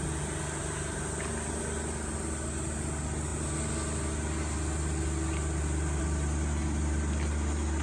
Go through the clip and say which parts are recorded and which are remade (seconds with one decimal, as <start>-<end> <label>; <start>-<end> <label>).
0.0-7.8 recorded